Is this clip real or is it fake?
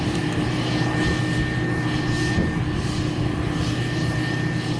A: real